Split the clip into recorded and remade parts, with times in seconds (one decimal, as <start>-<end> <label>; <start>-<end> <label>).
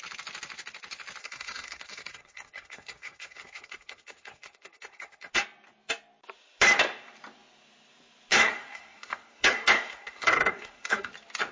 0.0-1.2 recorded; 1.2-5.3 remade; 5.3-8.3 recorded; 8.3-11.1 remade; 11.1-11.5 recorded